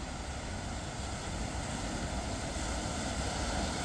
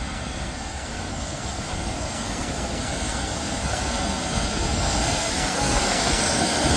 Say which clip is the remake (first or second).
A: second